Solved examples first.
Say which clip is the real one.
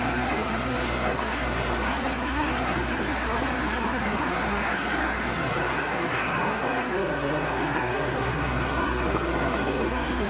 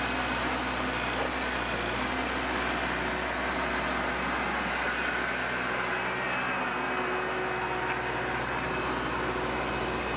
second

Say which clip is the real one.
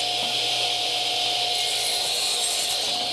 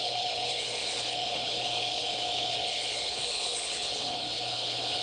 first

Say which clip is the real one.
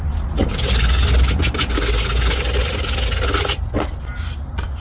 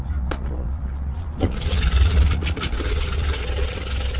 first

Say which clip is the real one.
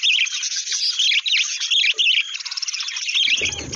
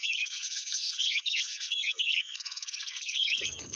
first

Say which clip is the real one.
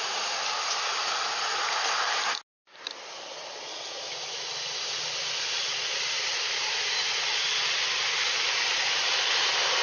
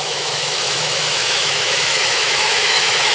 first